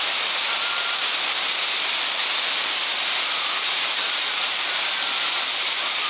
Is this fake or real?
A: fake